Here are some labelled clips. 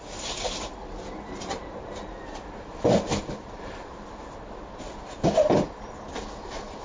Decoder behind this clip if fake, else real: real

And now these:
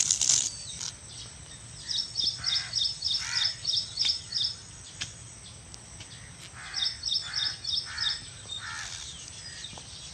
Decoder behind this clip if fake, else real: real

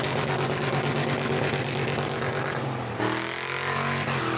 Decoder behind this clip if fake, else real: real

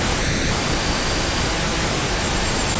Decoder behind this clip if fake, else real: real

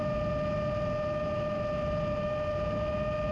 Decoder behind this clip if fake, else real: real